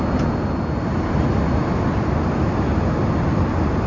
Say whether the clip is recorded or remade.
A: recorded